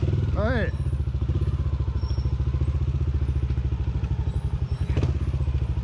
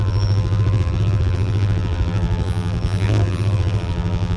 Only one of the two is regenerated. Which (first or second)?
second